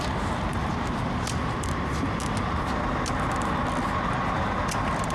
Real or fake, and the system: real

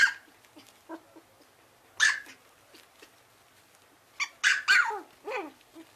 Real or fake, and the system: real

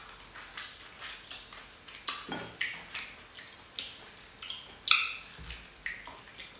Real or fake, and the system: real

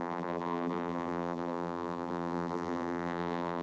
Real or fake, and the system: fake, vocoder, BigVGAN v2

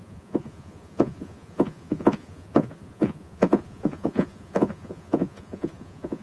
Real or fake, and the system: fake, vocoder, Vocos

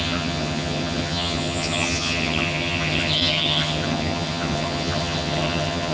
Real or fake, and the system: fake, vocoder, HiFi-GAN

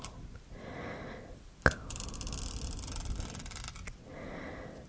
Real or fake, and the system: real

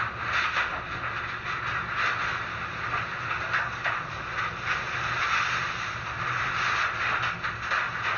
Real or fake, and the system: real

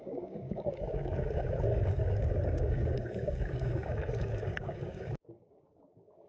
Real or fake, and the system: fake, codec, DAC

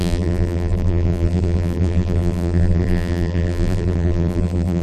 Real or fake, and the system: fake, vocoder, BigVGAN v2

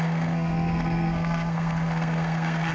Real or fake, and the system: fake, codec, SNAC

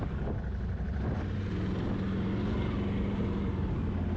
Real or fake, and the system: real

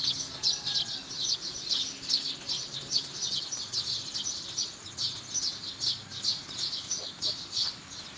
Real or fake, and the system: real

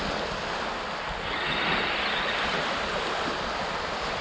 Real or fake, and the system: real